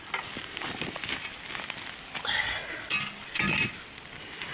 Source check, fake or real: real